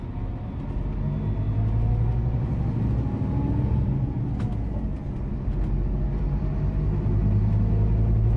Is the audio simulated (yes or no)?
no